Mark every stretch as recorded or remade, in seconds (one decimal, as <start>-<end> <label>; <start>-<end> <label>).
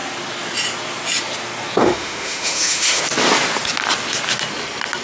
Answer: 0.0-1.8 recorded; 1.8-3.0 remade; 3.0-5.0 recorded